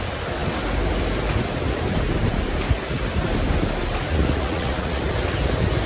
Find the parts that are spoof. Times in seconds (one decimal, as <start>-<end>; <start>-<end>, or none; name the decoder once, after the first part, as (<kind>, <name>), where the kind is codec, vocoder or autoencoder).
4.1-5.0 (vocoder, Vocos)